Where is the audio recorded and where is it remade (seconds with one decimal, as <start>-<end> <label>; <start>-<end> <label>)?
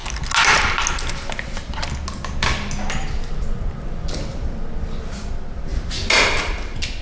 0.0-7.0 recorded